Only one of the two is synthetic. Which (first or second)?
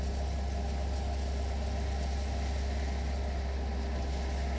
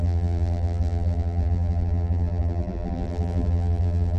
second